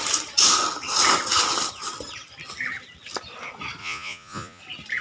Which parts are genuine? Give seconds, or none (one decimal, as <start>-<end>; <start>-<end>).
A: 0.0-3.8; 4.6-5.0